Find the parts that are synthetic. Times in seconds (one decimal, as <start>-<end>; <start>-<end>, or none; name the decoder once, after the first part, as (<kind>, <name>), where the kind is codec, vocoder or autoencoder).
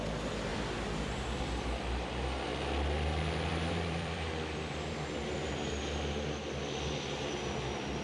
0.5-1.4 (vocoder, BigVGAN v2); 3.5-5.5